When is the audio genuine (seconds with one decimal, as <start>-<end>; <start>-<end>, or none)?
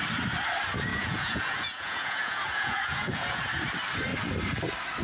0.0-0.9; 3.4-5.0